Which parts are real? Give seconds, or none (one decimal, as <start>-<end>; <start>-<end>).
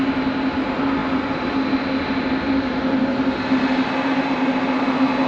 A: 0.0-5.3